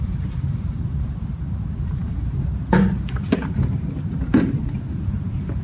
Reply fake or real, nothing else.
fake